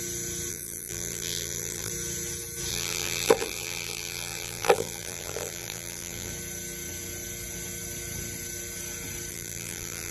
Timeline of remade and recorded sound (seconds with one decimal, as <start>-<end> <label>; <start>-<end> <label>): 0.0-0.5 recorded; 0.5-1.9 remade; 1.9-2.7 recorded; 2.7-6.3 remade; 6.3-9.3 recorded; 9.3-10.1 remade